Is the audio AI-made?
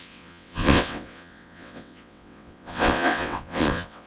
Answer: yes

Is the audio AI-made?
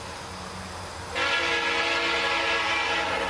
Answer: no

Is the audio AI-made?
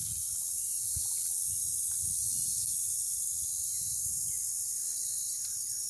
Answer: no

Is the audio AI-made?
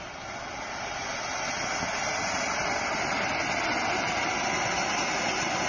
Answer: no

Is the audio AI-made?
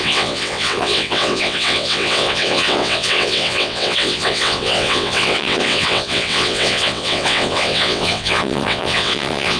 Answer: yes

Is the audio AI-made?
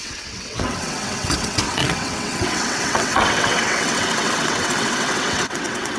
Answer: yes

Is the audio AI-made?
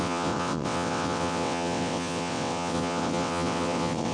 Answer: yes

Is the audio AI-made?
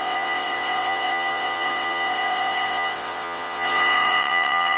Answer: yes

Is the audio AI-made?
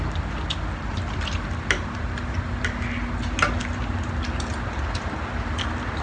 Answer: no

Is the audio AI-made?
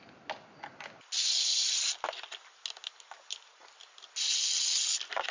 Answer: no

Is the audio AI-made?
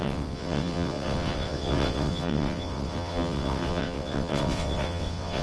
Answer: yes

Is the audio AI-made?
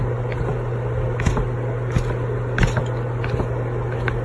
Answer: no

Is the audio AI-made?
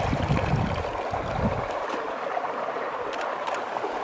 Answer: no